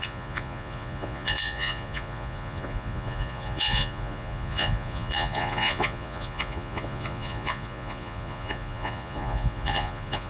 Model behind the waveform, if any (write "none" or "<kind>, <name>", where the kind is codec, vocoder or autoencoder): vocoder, Vocos